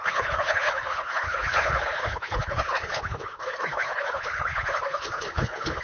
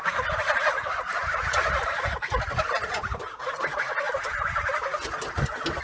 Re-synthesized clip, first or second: first